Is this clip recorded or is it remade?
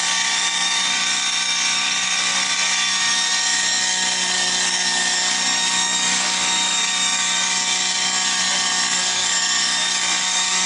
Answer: remade